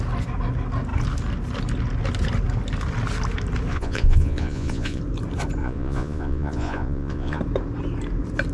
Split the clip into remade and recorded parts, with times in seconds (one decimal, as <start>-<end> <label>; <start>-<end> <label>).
0.0-3.7 recorded; 3.7-5.0 remade; 5.0-5.6 recorded; 5.6-7.4 remade; 7.4-8.5 recorded